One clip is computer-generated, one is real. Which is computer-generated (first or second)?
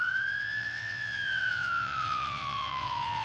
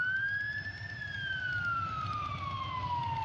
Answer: first